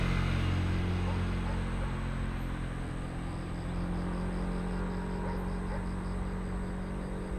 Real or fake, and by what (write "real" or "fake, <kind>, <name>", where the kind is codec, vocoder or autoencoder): real